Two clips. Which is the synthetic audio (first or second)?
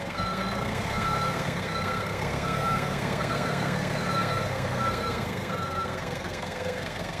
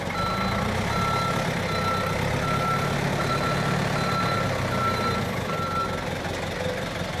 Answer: first